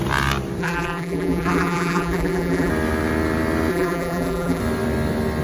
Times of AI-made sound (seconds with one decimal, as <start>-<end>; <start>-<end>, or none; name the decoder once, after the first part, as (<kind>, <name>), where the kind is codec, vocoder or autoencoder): 0.6-2.7 (vocoder, BigVGAN v2); 3.7-4.6